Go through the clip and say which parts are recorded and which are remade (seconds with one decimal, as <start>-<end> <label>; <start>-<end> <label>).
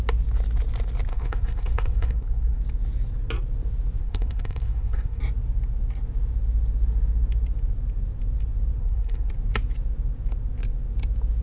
0.0-1.1 recorded; 1.1-2.6 remade; 2.6-4.0 recorded; 4.0-5.2 remade; 5.2-8.8 recorded; 8.8-9.3 remade; 9.3-11.4 recorded